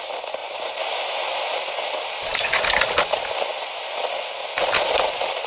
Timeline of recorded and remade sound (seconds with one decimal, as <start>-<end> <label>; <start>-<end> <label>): 0.0-5.5 recorded